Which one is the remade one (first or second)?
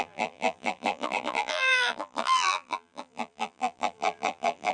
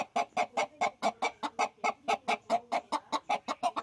first